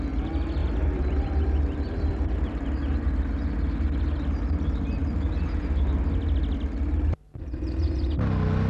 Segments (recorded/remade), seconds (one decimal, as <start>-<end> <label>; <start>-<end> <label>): 0.0-0.6 recorded; 0.6-2.8 remade; 2.8-8.7 recorded